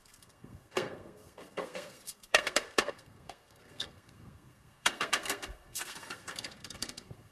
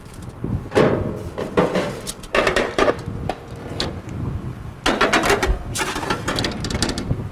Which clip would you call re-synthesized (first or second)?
first